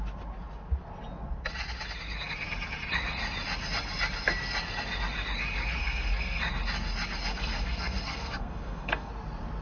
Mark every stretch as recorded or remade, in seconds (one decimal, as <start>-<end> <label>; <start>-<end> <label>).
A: 0.0-5.8 recorded; 5.8-6.4 remade; 6.4-7.3 recorded; 7.3-9.1 remade; 9.1-9.6 recorded